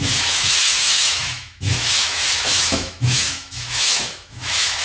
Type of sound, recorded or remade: remade